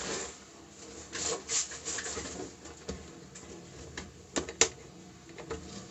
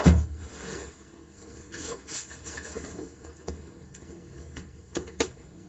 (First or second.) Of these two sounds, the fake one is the second